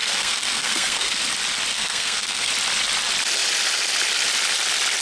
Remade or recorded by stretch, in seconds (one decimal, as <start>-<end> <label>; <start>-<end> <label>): 0.0-1.2 remade; 1.2-1.7 recorded; 1.7-2.5 remade; 2.5-5.0 recorded

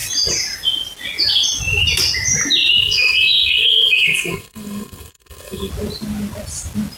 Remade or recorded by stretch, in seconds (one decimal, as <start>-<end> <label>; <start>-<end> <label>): 0.0-2.8 recorded; 2.8-5.7 remade; 5.7-7.0 recorded

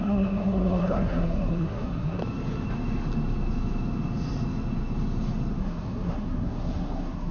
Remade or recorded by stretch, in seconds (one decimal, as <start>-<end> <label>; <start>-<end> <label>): 0.0-2.2 remade; 2.2-5.6 recorded; 5.6-7.3 remade

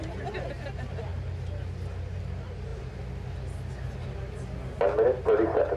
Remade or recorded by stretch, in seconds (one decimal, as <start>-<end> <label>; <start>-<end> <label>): 0.0-5.8 recorded

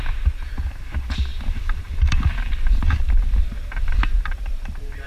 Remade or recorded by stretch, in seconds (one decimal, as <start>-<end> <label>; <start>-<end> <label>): 0.0-5.1 recorded